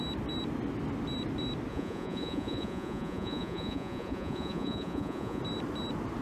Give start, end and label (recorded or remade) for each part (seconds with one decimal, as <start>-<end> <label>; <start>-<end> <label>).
0.0-1.7 recorded; 1.7-5.4 remade; 5.4-6.2 recorded

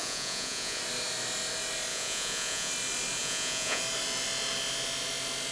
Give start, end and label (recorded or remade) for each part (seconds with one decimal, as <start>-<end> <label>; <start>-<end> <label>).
0.0-0.8 remade; 0.8-1.9 recorded; 1.9-2.7 remade; 2.7-3.2 recorded; 3.2-3.8 remade; 3.8-5.5 recorded

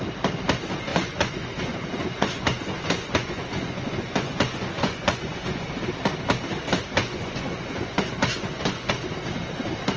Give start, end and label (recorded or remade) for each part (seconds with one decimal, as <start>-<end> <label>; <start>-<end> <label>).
0.0-0.9 recorded; 0.9-5.7 remade; 5.7-7.0 recorded; 7.0-8.9 remade; 8.9-10.0 recorded

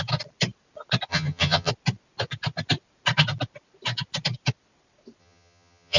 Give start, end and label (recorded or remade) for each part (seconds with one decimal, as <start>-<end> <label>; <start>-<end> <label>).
0.0-1.1 recorded; 1.1-1.7 remade; 1.7-5.2 recorded; 5.2-6.0 remade

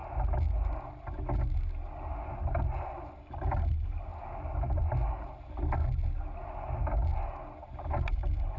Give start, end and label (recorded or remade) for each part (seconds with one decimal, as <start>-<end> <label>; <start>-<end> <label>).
0.0-3.2 recorded; 3.2-4.1 remade; 4.1-8.1 recorded; 8.1-8.6 remade